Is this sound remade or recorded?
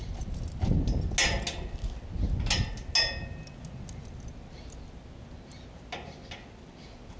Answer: recorded